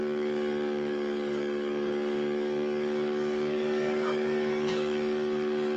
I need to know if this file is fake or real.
fake